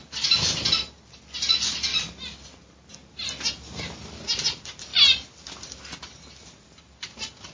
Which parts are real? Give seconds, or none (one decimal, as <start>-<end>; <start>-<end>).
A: 0.0-7.5